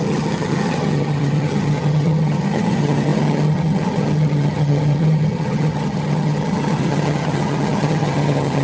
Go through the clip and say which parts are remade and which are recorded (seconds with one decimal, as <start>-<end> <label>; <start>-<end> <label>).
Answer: 0.0-8.6 remade